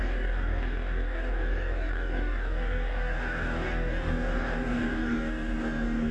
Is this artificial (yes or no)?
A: yes